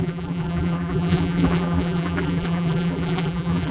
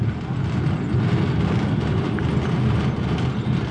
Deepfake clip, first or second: first